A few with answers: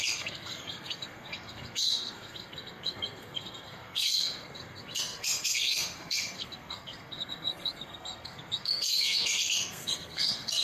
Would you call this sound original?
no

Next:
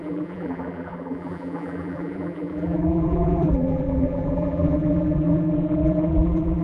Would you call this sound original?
no